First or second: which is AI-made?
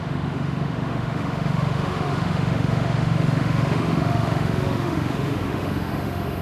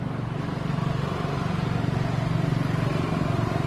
first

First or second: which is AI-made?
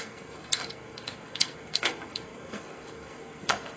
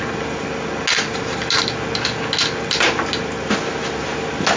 first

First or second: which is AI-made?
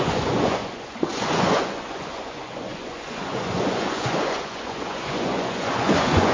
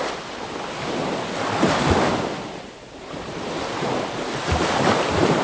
first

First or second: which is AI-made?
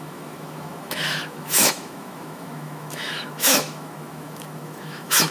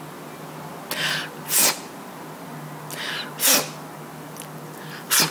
first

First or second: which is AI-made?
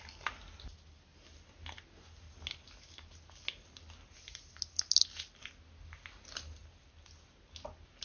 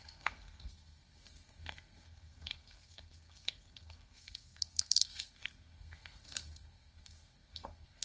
second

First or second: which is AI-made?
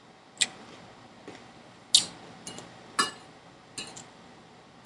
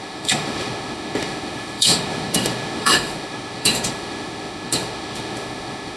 second